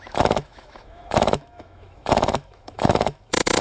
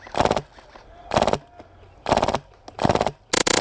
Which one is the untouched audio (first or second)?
second